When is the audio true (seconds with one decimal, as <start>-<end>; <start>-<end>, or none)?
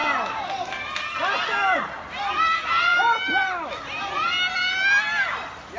0.0-5.8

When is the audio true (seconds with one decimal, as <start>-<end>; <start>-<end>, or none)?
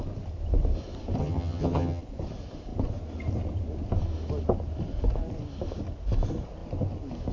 0.0-1.2; 2.0-7.3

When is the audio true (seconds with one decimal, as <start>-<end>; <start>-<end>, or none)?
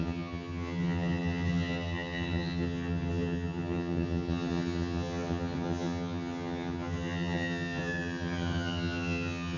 none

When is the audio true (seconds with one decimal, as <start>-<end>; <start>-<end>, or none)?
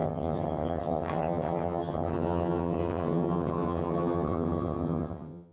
none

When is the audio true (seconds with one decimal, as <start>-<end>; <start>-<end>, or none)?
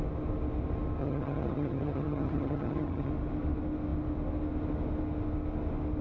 0.0-1.0; 3.1-6.0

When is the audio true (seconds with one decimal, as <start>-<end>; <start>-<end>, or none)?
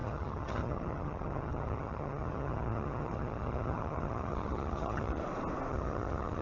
5.2-5.7